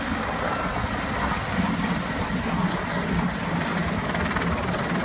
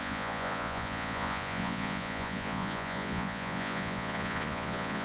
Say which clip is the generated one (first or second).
second